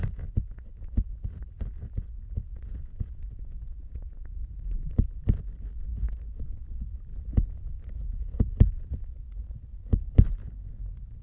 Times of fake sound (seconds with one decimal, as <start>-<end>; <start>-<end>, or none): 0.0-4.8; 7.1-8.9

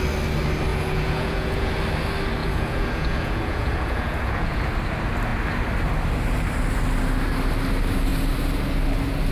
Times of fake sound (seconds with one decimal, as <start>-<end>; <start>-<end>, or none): 0.7-1.7; 2.4-4.6

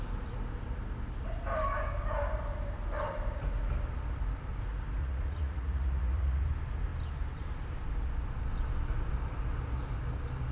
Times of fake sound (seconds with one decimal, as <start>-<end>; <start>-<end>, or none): 5.0-6.4

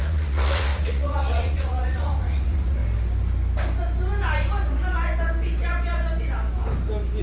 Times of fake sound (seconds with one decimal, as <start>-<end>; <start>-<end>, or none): 0.0-2.8

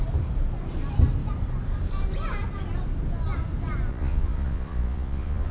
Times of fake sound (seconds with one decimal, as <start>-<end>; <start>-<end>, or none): 3.9-5.5

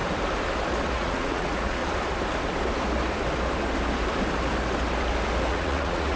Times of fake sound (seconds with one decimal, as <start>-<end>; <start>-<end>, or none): 0.9-1.8; 5.5-6.2

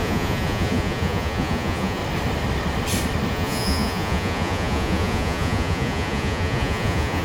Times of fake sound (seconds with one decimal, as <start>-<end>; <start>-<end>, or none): 0.0-2.0; 3.3-7.2